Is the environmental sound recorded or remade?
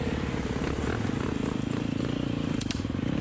recorded